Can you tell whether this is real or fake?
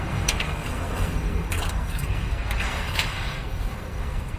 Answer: fake